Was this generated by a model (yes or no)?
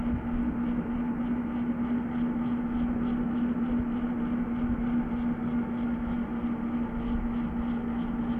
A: no